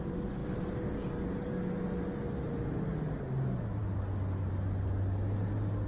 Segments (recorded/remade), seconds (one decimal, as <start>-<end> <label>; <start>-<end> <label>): 0.0-5.9 recorded